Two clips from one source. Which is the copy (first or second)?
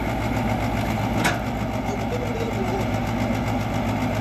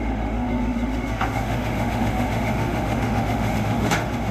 second